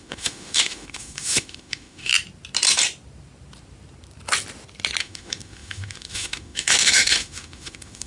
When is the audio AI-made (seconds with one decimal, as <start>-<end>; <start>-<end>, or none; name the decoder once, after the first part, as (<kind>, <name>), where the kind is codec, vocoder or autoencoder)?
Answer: 0.0-2.1 (autoencoder, DAC-VAE); 5.0-8.1